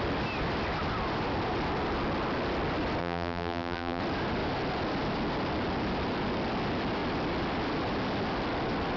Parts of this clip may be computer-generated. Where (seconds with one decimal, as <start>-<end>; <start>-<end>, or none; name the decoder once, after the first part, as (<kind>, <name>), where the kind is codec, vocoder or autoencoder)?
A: 3.0-4.0 (vocoder, BigVGAN v2)